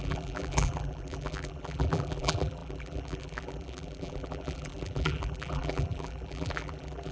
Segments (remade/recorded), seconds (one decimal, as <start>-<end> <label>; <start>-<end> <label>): 0.0-7.1 remade